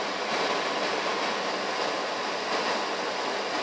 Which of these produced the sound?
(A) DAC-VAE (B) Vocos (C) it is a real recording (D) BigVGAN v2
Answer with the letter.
C